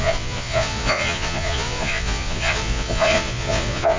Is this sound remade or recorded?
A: remade